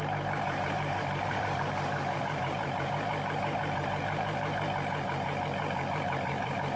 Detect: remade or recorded remade